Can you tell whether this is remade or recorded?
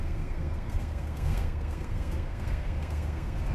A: remade